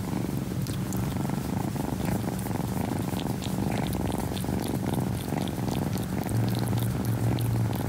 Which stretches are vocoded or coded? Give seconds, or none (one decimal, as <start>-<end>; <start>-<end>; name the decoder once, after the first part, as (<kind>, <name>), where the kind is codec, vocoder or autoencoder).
0.6-3.2 (vocoder, BigVGAN v2); 4.2-7.9